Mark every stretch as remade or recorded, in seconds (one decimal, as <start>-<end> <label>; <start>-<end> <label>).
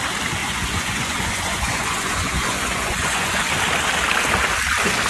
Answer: 0.0-0.4 recorded; 0.4-3.5 remade; 3.5-5.1 recorded